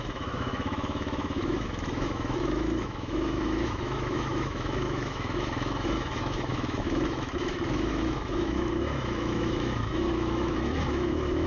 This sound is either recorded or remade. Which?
remade